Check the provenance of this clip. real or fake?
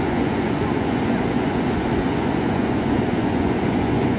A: fake